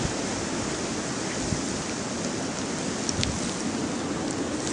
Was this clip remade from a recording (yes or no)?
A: no